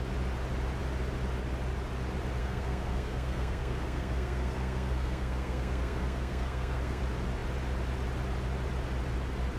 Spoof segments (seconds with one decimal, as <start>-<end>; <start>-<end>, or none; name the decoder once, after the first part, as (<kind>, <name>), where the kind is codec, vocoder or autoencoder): 2.4-7.0 (codec, SNAC)